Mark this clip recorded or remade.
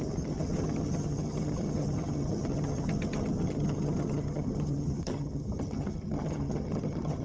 remade